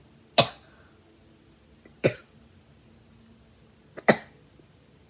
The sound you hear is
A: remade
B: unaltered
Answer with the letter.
B